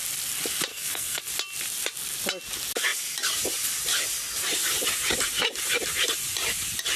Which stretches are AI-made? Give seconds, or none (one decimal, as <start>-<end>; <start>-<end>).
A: 0.7-1.2